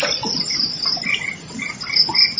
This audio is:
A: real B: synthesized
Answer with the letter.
A